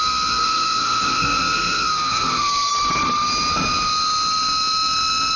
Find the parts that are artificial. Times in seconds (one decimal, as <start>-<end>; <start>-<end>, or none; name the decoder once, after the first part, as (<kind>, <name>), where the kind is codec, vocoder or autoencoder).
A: 0.0-2.7 (codec, SNAC)